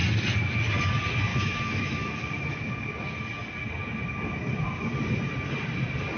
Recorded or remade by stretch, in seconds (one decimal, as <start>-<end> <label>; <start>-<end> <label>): 0.0-1.3 recorded; 1.3-2.7 remade; 2.7-6.2 recorded